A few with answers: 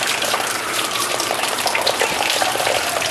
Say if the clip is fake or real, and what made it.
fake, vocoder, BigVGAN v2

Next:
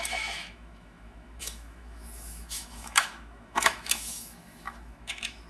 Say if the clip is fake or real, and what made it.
fake, autoencoder, DAC-VAE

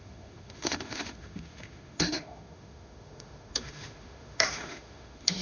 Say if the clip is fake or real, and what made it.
fake, autoencoder, DAC-VAE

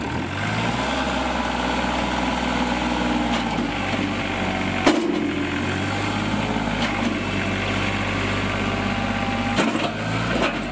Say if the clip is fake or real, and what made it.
real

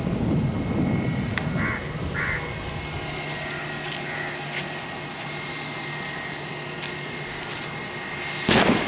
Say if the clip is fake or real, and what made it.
real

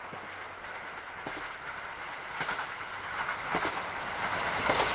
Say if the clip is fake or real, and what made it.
real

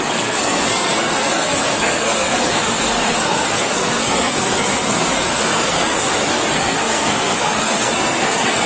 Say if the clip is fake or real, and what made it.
fake, codec, SNAC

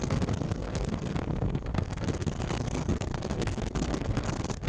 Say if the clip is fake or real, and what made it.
fake, codec, SNAC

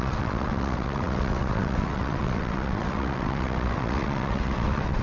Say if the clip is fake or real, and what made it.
fake, vocoder, WaveNeXt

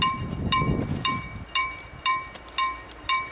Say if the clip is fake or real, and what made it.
fake, vocoder, BigVGAN v2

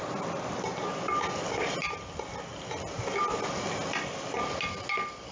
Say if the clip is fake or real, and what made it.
real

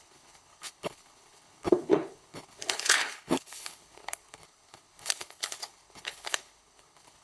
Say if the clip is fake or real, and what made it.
fake, codec, HILCodec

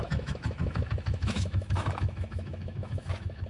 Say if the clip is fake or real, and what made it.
fake, autoencoder, DAC-VAE